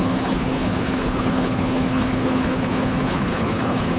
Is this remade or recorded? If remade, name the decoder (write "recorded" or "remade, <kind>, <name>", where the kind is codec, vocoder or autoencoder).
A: remade, codec, HILCodec